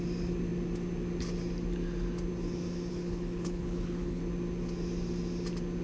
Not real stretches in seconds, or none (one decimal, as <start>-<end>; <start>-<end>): 2.9-4.2